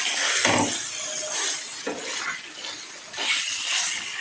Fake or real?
real